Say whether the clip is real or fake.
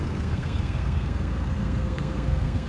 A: fake